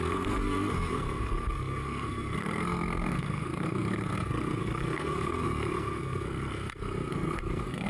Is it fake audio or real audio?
fake